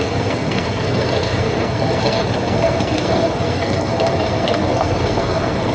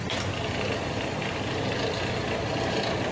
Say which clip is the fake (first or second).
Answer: first